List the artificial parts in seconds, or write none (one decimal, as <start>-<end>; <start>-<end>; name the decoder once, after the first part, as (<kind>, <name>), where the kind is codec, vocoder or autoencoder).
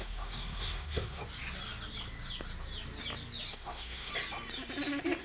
0.0-1.2 (codec, SNAC); 3.5-4.1